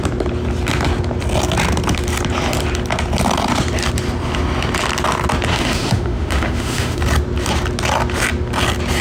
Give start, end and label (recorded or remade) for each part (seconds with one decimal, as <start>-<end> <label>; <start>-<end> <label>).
0.0-5.5 recorded; 5.5-7.0 remade; 7.0-9.0 recorded